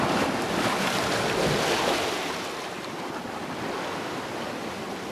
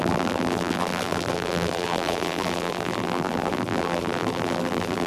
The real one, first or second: first